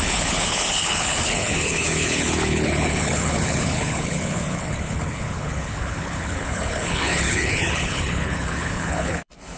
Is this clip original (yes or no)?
no